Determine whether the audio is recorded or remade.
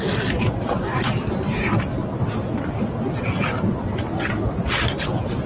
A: recorded